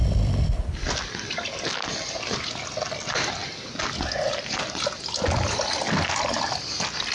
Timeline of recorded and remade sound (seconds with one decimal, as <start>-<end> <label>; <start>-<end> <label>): 0.0-1.0 remade; 1.0-7.1 recorded